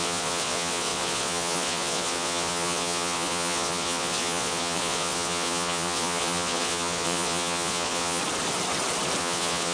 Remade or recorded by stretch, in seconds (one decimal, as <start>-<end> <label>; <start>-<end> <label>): 0.0-8.2 remade; 8.2-9.2 recorded; 9.2-9.7 remade